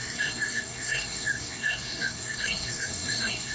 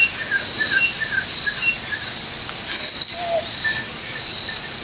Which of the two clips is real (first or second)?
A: second